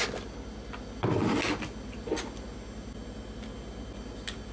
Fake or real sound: real